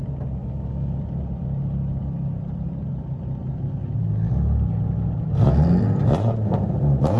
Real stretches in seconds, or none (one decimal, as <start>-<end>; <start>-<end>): 0.0-0.4; 1.0-7.2